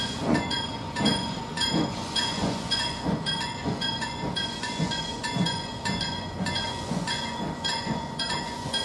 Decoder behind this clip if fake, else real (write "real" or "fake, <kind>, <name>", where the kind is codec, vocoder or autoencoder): fake, vocoder, Vocos